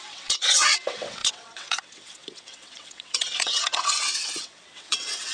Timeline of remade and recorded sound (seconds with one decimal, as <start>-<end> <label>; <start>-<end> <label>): 0.0-5.3 remade